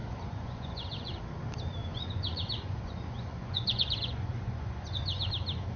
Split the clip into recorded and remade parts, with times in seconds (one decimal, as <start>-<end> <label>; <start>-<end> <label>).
0.0-1.2 remade; 1.2-1.8 recorded; 1.8-5.3 remade; 5.3-5.8 recorded